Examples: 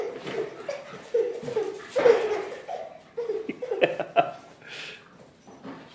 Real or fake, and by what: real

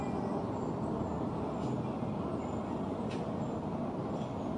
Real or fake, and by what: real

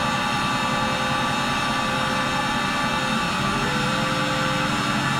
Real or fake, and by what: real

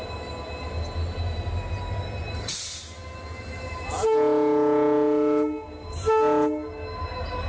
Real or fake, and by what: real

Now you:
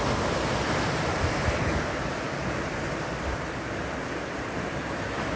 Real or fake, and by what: real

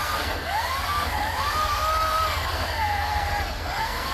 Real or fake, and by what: fake, codec, SNAC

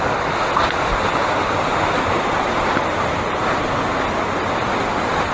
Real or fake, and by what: real